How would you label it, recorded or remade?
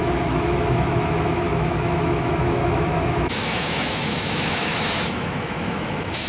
remade